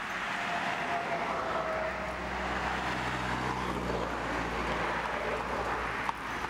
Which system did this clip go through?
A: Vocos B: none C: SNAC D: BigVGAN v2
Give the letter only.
B